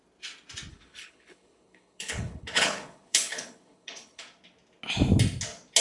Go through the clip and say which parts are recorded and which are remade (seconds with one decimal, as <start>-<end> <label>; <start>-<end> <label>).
0.0-0.7 recorded; 0.7-4.2 remade; 4.2-5.8 recorded